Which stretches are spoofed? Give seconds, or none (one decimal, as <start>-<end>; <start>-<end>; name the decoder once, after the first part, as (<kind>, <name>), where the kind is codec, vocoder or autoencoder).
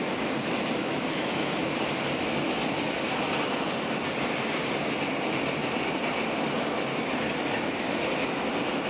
0.8-1.7 (autoencoder, DAC-VAE)